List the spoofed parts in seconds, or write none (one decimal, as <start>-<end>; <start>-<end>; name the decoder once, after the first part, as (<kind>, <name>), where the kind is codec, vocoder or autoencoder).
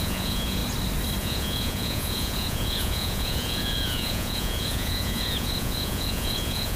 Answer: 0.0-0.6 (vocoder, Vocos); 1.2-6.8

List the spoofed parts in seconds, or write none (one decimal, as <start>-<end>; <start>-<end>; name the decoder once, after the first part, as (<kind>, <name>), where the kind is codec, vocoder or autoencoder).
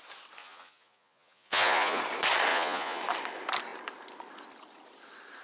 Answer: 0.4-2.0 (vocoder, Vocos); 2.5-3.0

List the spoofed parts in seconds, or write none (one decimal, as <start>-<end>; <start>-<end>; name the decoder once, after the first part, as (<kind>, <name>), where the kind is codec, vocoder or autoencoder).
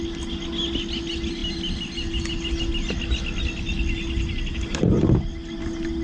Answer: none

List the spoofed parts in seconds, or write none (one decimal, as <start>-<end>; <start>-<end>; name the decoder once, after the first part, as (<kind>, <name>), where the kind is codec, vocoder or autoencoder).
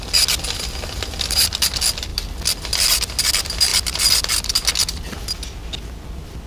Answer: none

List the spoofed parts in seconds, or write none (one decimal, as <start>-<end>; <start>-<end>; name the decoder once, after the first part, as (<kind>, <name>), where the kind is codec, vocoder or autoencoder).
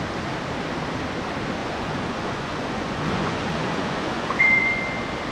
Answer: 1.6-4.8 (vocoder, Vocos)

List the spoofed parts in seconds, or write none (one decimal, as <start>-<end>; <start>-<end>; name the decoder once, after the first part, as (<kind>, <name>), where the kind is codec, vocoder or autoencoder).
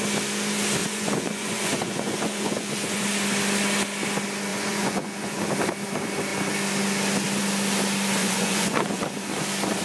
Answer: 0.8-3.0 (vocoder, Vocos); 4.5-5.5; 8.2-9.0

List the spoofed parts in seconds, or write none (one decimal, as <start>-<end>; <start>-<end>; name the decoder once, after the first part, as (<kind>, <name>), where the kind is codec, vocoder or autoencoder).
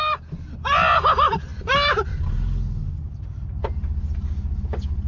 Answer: none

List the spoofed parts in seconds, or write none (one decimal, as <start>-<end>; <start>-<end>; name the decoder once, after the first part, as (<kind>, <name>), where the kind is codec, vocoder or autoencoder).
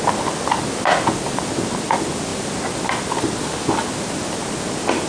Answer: none